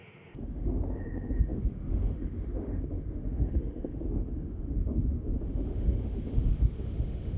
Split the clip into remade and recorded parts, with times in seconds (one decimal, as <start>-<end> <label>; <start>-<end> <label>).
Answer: 0.0-7.4 remade